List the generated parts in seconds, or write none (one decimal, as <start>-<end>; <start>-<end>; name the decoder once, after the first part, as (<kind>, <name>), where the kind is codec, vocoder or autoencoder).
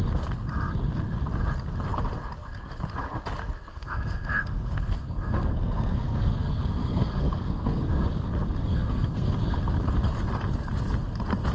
3.7-7.9 (codec, SNAC); 8.6-9.4